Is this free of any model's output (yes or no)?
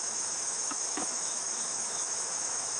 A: no